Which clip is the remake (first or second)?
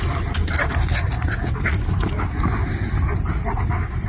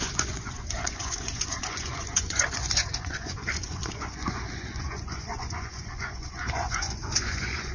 second